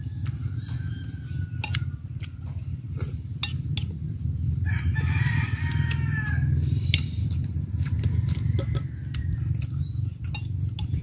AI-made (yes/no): no